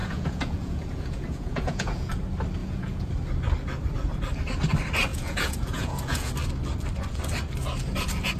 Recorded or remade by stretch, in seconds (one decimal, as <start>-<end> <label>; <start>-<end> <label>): 0.0-2.1 remade; 2.1-2.6 recorded; 2.6-3.1 remade; 3.1-5.1 recorded; 5.1-6.3 remade; 6.3-8.4 recorded